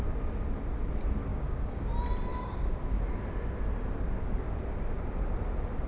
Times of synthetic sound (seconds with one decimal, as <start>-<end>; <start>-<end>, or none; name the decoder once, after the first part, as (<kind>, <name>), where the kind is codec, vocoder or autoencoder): 1.3-1.9 (codec, DAC); 2.3-3.0